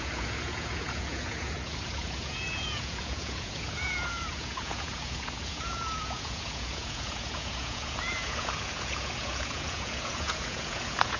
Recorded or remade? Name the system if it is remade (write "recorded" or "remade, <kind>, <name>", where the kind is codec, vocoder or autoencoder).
remade, vocoder, Vocos